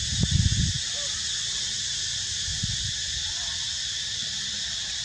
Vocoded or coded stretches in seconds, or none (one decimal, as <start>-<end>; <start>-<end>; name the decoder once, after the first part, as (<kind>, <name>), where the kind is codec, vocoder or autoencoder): none